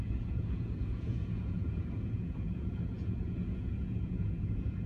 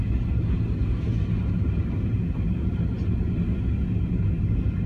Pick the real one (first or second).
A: second